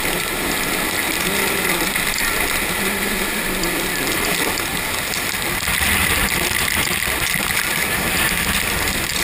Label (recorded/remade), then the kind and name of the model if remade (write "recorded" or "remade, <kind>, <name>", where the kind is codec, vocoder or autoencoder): recorded